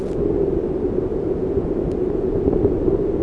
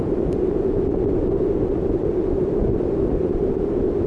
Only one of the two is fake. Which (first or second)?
second